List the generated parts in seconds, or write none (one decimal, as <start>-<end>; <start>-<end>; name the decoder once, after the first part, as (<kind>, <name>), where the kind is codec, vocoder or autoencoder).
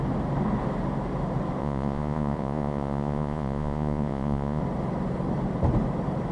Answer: 1.6-4.6 (vocoder, Vocos)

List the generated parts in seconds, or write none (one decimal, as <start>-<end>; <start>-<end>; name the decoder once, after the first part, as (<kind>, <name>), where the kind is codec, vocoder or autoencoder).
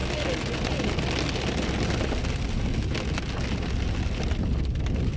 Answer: none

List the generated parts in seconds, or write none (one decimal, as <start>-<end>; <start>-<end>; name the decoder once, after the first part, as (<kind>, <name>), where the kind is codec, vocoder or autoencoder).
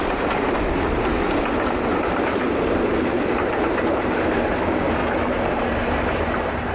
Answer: 0.0-1.1 (vocoder, BigVGAN v2); 2.1-6.7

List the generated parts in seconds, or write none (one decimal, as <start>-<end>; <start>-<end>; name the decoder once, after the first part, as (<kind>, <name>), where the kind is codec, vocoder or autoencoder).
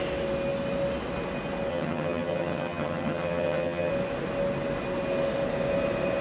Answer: 1.7-3.9 (vocoder, HiFi-GAN)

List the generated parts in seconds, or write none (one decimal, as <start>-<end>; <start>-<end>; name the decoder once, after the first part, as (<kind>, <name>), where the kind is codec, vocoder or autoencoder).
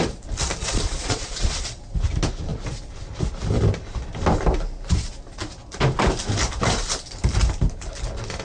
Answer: 0.6-1.8 (vocoder, Vocos)